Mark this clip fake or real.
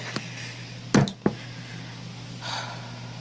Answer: real